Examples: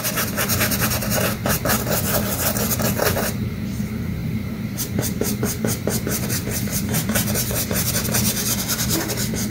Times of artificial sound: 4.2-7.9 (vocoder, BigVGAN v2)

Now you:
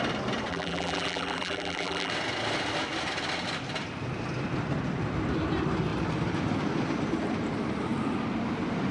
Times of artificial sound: 0.5-2.1 (vocoder, BigVGAN v2)

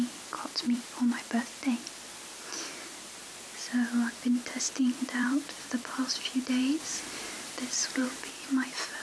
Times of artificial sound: 0.0-3.2 (vocoder, BigVGAN v2); 4.5-9.0

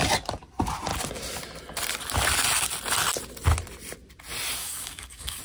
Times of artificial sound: 4.6-5.4 (codec, DAC)